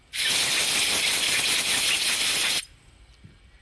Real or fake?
real